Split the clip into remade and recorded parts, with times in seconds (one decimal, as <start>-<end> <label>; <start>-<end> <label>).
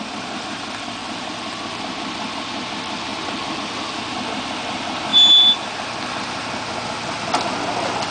0.0-8.1 recorded